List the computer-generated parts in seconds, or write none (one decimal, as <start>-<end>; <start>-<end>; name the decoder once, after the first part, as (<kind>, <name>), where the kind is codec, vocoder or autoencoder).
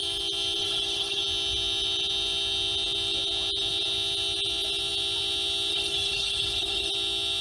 0.6-1.2 (codec, HILCodec); 5.7-6.9